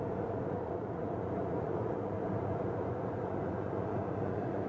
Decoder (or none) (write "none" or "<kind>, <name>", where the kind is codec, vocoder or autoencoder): vocoder, Vocos